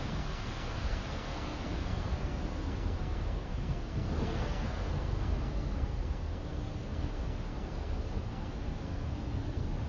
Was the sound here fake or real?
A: fake